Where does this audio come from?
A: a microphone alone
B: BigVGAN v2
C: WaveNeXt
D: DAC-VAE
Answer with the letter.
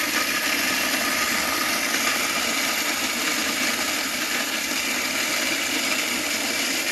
B